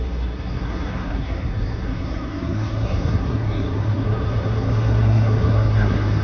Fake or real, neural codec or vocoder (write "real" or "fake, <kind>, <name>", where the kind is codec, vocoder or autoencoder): fake, codec, SNAC